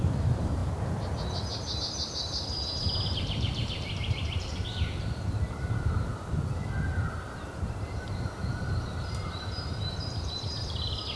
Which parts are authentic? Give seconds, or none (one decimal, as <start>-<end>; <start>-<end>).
0.6-1.8